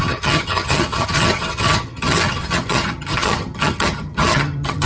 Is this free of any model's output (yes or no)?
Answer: no